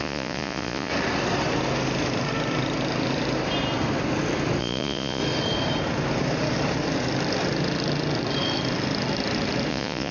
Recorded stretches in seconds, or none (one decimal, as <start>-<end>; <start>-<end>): 0.9-4.6; 5.2-9.7